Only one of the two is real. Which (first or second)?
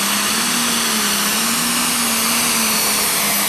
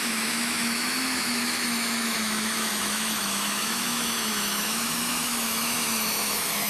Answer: first